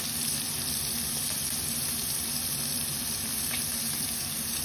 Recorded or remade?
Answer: remade